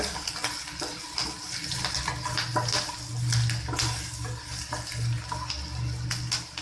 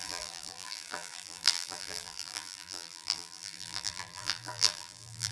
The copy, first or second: second